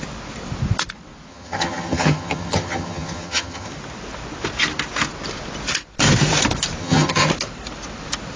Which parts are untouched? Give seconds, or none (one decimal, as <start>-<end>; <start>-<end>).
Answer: 0.0-1.3; 3.7-6.8; 7.3-8.4